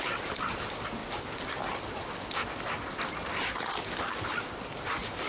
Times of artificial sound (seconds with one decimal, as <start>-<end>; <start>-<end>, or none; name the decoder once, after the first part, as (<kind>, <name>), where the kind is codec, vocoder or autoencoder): none